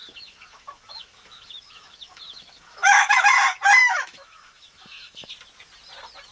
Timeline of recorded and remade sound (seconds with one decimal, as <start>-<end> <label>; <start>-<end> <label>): 0.0-3.1 remade; 3.1-3.8 recorded; 3.8-5.3 remade; 5.3-6.3 recorded